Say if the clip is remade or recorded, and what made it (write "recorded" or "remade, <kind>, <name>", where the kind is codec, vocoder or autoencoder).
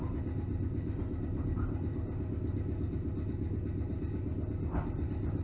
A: recorded